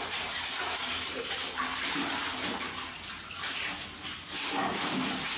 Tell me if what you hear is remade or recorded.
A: remade